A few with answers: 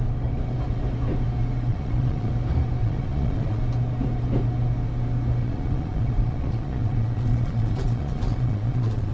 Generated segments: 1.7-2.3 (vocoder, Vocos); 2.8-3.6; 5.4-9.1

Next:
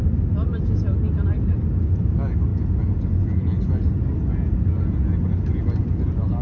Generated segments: none

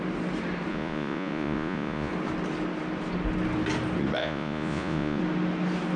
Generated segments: 0.7-2.1 (vocoder, Vocos); 4.2-5.2